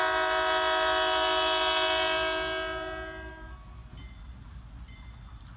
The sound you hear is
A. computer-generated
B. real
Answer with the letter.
B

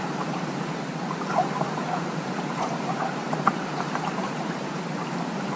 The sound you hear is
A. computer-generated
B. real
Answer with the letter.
A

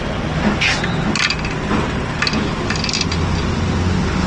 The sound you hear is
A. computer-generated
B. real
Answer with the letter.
B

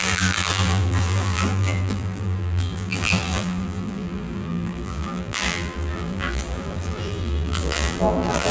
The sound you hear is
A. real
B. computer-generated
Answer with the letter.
B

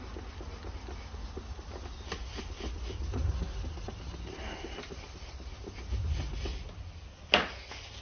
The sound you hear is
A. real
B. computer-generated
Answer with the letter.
A